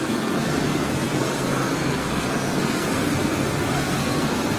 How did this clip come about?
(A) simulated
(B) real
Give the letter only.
A